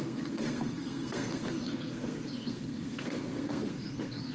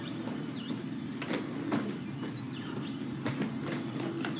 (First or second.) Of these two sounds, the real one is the second